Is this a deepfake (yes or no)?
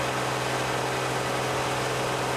no